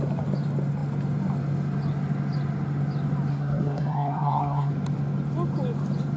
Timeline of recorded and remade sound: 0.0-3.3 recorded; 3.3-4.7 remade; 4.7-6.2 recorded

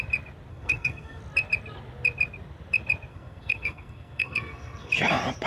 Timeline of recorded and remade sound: 0.0-0.5 recorded; 0.5-1.2 remade; 1.2-3.1 recorded; 3.1-4.9 remade; 4.9-5.5 recorded

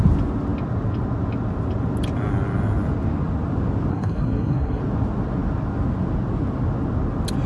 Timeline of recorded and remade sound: 0.0-3.9 recorded; 3.9-4.8 remade; 4.8-7.5 recorded